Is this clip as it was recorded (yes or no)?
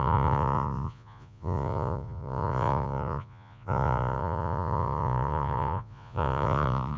no